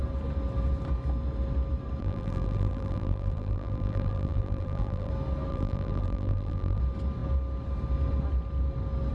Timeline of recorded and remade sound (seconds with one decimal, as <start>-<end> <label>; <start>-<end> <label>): 0.0-2.0 recorded; 2.0-5.1 remade; 5.1-5.5 recorded; 5.5-6.8 remade; 6.8-9.1 recorded